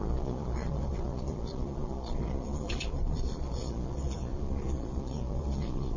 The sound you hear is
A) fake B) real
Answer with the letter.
A